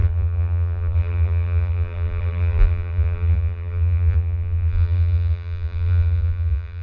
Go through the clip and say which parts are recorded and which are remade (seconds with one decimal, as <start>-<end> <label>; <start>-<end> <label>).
0.0-6.8 remade